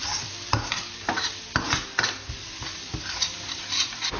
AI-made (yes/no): no